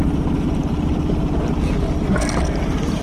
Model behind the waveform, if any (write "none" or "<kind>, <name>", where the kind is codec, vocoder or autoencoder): none